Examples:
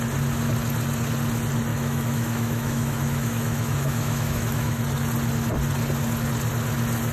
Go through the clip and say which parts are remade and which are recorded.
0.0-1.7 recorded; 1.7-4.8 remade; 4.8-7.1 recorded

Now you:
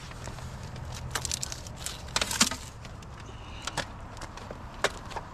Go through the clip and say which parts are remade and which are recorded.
0.0-5.3 recorded

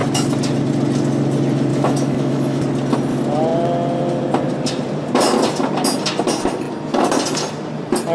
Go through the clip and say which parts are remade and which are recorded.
0.0-1.7 recorded; 1.7-2.6 remade; 2.6-8.1 recorded

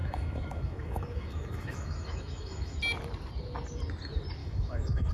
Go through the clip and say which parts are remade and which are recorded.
0.0-2.8 remade; 2.8-4.4 recorded; 4.4-5.1 remade

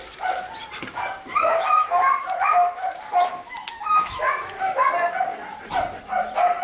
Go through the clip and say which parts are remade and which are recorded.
0.0-1.3 recorded; 1.3-4.8 remade; 4.8-6.6 recorded

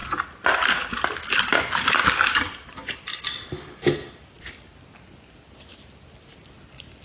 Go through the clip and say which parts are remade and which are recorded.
0.0-7.0 recorded

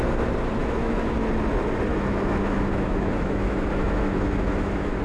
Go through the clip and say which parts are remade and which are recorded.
0.0-0.6 recorded; 0.6-1.3 remade; 1.3-1.9 recorded; 1.9-5.0 remade

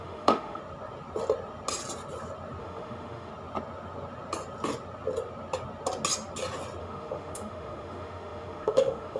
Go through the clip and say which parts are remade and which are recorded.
0.0-0.6 remade; 0.6-2.6 recorded; 2.6-3.3 remade; 3.3-6.8 recorded; 6.8-9.2 remade